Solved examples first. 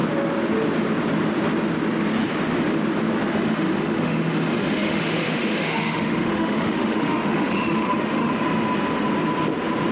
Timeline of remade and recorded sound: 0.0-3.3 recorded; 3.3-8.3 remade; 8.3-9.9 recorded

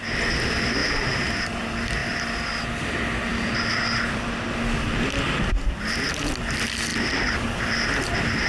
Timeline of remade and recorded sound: 0.0-2.0 recorded; 2.0-2.5 remade; 2.5-3.3 recorded; 3.3-6.1 remade; 6.1-6.9 recorded; 6.9-8.5 remade

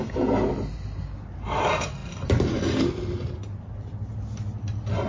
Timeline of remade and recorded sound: 0.0-5.1 recorded

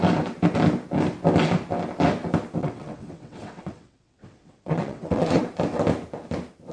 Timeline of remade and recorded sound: 0.0-2.6 recorded; 2.6-5.4 remade; 5.4-6.7 recorded

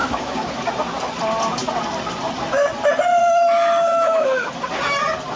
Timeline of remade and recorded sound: 0.0-0.5 remade; 0.5-3.2 recorded; 3.2-4.5 remade; 4.5-5.4 recorded

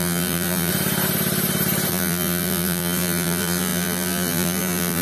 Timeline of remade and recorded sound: 0.0-0.7 remade; 0.7-1.9 recorded; 1.9-5.0 remade